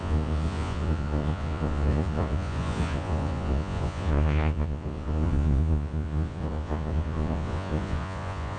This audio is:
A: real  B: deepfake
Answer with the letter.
B